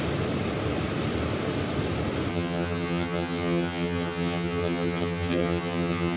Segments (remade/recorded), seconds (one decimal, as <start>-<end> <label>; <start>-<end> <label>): 0.0-2.3 recorded; 2.3-6.2 remade